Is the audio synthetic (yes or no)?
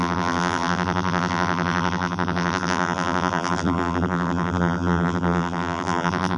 yes